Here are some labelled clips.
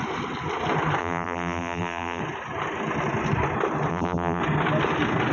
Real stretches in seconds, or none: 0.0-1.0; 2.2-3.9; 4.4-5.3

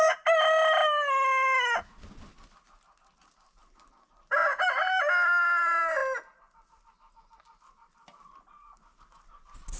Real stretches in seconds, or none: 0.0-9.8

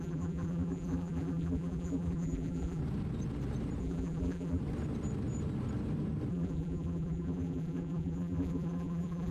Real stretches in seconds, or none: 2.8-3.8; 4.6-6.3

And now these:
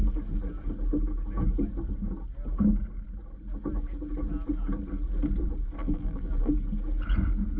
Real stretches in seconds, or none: 0.0-5.8; 6.5-7.6